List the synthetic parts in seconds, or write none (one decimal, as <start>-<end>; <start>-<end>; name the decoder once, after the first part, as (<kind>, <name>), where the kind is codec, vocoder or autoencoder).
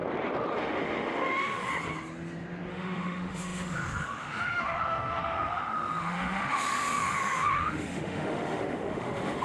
0.6-1.7 (autoencoder, DAC-VAE); 2.7-9.4